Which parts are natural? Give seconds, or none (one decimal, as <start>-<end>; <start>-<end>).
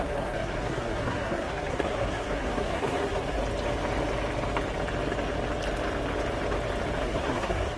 3.4-7.0